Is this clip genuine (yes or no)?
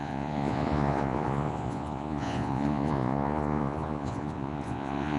no